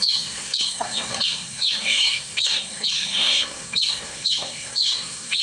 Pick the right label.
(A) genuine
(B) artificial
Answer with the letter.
B